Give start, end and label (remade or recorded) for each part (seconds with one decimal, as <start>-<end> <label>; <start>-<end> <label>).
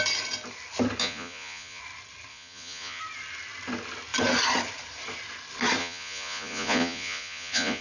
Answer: 0.0-1.0 recorded; 1.0-1.8 remade; 1.8-2.3 recorded; 2.3-3.0 remade; 3.0-5.8 recorded; 5.8-7.8 remade